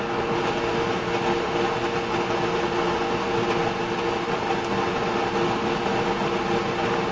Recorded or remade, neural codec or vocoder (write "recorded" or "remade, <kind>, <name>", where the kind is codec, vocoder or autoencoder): recorded